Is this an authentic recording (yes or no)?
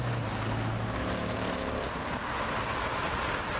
yes